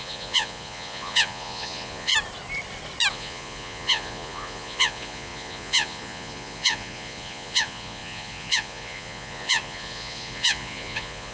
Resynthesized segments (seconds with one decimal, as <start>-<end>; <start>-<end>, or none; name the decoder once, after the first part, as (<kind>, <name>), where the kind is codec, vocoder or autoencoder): 0.0-2.1 (vocoder, Vocos); 3.1-11.3